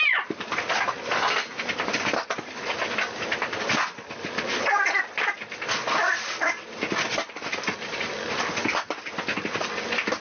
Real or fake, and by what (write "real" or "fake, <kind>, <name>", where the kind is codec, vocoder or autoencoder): fake, vocoder, BigVGAN v2